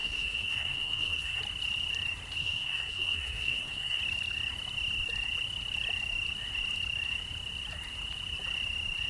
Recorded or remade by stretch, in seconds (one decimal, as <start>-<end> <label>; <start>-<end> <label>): 0.0-1.4 remade; 1.4-2.4 recorded; 2.4-4.0 remade; 4.0-9.1 recorded

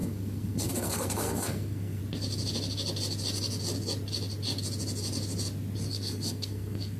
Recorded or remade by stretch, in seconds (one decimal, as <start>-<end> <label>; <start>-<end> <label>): 0.0-2.0 remade; 2.0-5.9 recorded; 5.9-7.0 remade

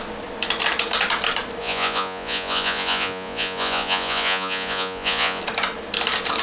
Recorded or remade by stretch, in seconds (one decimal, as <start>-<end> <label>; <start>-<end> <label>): 0.0-1.6 recorded; 1.6-5.4 remade; 5.4-6.4 recorded